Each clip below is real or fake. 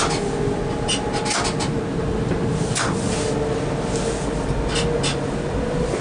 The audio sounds real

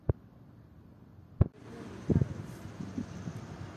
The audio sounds real